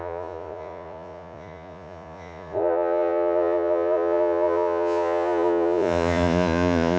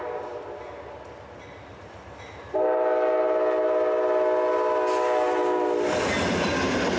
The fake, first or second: first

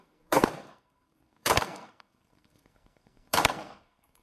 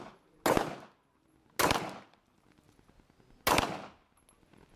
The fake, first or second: first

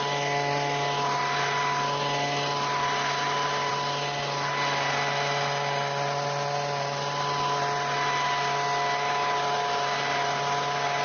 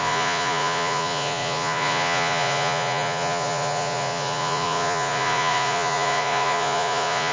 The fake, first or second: second